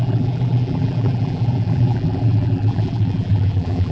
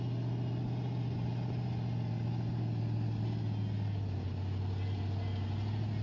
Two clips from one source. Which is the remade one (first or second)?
first